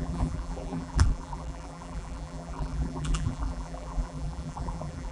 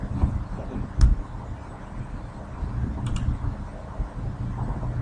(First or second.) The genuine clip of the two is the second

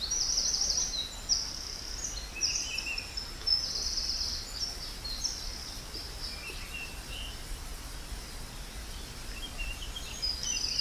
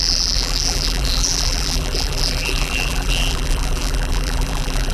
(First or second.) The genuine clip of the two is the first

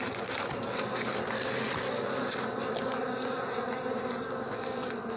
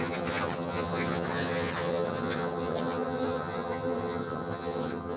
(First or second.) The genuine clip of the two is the first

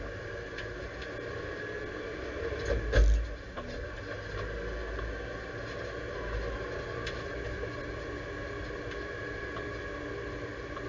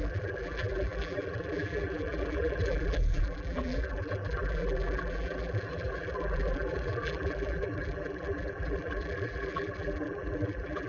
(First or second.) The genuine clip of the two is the first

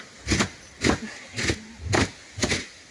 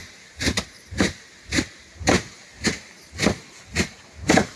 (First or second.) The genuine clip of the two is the first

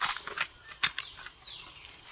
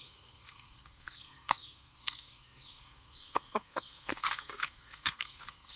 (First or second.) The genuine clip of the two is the first